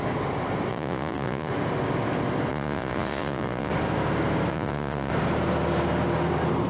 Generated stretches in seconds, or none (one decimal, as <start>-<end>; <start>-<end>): 0.7-1.5; 2.5-3.7; 4.5-5.1